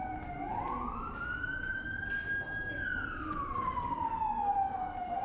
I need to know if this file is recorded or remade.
recorded